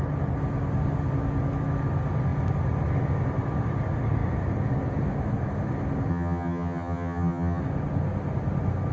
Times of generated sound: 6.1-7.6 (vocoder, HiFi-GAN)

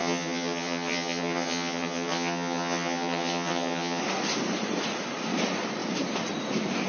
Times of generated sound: 0.0-4.0 (vocoder, HiFi-GAN)

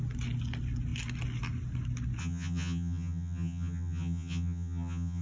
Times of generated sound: 2.2-5.2 (vocoder, HiFi-GAN)

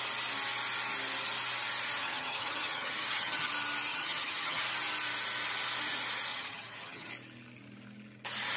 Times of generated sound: 2.0-3.5 (vocoder, HiFi-GAN); 3.9-4.6; 6.3-7.1

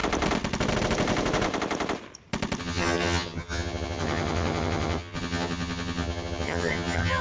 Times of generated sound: 2.6-7.2 (vocoder, HiFi-GAN)